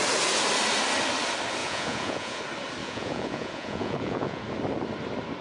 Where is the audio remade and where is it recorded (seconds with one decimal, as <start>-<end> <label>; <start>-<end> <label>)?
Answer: 0.0-1.6 recorded; 1.6-2.4 remade; 2.4-2.8 recorded; 2.8-4.4 remade; 4.4-5.4 recorded